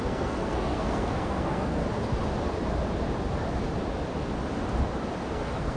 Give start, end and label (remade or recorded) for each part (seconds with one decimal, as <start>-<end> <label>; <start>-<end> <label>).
0.0-1.8 remade; 1.8-5.3 recorded; 5.3-5.8 remade